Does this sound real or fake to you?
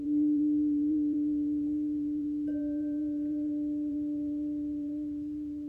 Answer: fake